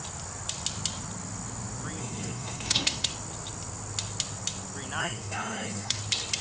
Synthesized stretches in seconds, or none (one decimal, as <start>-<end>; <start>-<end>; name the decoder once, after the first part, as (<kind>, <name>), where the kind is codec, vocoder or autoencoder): 2.0-3.1 (codec, SNAC); 5.0-6.0